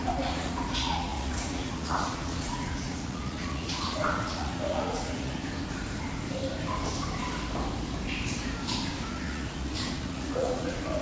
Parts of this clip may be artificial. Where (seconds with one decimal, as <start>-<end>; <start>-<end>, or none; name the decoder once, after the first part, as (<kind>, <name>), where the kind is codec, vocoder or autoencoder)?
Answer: 0.0-5.4 (vocoder, Vocos); 9.1-11.0